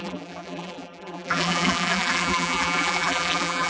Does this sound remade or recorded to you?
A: remade